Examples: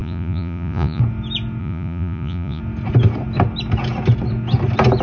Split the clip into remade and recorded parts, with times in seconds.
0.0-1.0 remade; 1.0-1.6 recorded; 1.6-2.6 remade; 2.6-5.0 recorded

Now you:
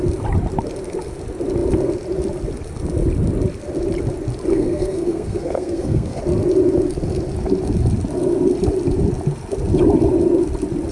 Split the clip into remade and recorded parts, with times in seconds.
0.0-4.5 recorded; 4.5-6.2 remade; 6.2-10.9 recorded